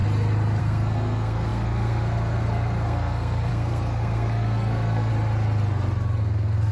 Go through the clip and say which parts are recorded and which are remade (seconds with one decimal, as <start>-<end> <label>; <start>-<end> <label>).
0.0-0.6 recorded; 0.6-5.1 remade; 5.1-6.2 recorded; 6.2-6.7 remade